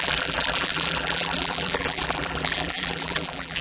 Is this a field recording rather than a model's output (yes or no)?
no